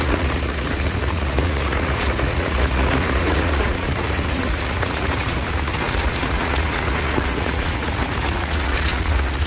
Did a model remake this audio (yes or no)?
yes